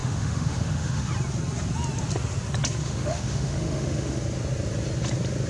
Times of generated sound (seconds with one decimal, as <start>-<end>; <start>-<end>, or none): 0.0-1.1; 2.8-4.2